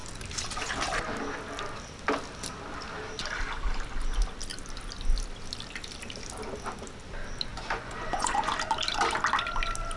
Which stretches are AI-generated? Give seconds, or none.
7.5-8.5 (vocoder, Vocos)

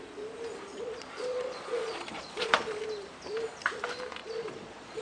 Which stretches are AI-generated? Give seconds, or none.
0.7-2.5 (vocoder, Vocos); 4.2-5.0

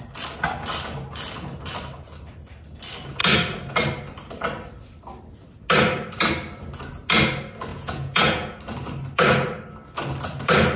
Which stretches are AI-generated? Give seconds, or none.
7.7-8.6 (vocoder, Vocos)

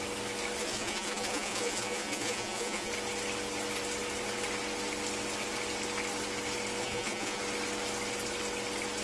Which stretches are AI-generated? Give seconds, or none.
0.6-2.9 (vocoder, Vocos); 6.8-7.4